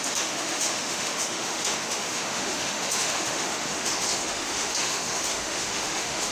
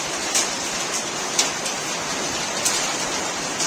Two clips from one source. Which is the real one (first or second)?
second